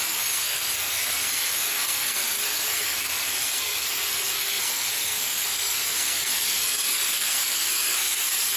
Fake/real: fake